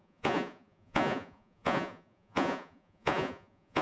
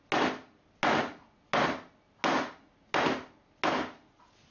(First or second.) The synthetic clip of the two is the first